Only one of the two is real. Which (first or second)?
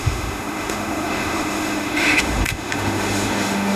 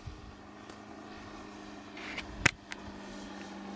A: second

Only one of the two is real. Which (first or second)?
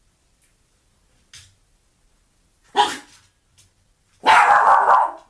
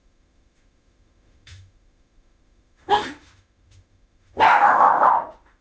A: first